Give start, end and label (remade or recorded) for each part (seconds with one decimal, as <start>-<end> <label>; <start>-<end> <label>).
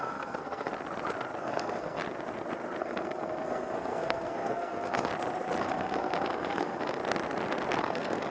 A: 0.0-0.7 remade; 0.7-1.4 recorded; 1.4-2.0 remade; 2.0-2.8 recorded; 2.8-5.1 remade; 5.1-5.6 recorded; 5.6-7.0 remade; 7.0-7.8 recorded; 7.8-8.3 remade